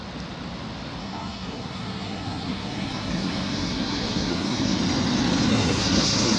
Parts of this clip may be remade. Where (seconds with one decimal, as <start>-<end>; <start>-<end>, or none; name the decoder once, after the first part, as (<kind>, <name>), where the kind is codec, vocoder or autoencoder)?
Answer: 1.0-4.8 (codec, SNAC); 5.5-6.4